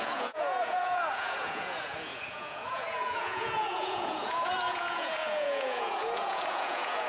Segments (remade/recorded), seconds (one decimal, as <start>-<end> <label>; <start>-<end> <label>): 0.0-7.1 remade